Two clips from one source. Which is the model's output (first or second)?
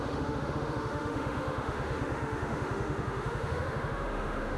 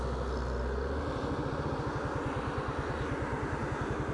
first